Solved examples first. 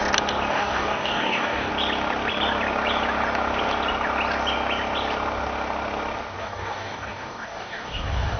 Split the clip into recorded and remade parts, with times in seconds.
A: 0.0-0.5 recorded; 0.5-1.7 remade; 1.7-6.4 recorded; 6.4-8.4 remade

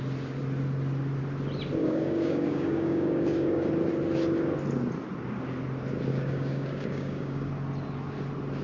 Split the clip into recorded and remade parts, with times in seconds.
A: 0.0-1.8 recorded; 1.8-3.7 remade; 3.7-6.1 recorded; 6.1-7.5 remade; 7.5-8.6 recorded

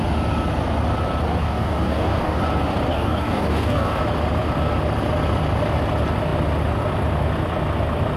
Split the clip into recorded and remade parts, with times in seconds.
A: 0.0-1.4 recorded; 1.4-2.4 remade; 2.4-2.9 recorded; 2.9-4.0 remade; 4.0-8.2 recorded